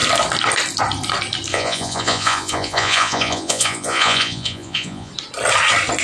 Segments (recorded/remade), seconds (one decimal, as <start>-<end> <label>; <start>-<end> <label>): 0.0-1.5 recorded; 1.5-5.1 remade; 5.1-6.0 recorded